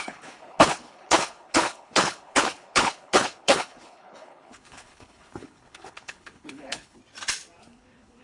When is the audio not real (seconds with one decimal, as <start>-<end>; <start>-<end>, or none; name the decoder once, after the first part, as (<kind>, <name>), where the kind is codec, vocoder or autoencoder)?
0.0-7.0 (codec, HILCodec); 7.6-8.2